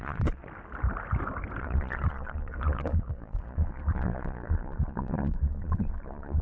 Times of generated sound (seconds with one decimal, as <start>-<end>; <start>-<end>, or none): 0.0-0.4; 1.6-6.4